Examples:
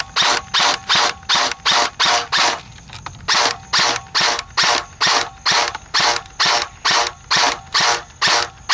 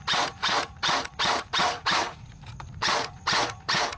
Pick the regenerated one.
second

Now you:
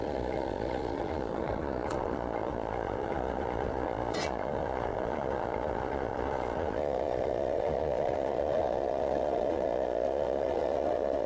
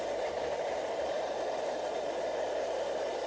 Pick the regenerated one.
first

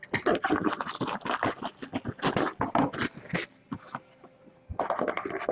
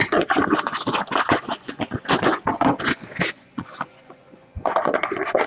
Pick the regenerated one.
second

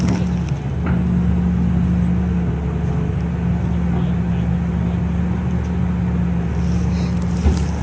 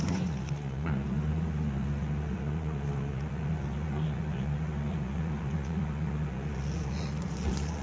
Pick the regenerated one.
second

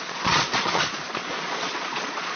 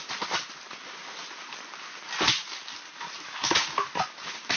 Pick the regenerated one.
first